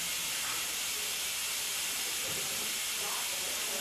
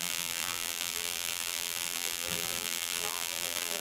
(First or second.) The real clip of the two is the first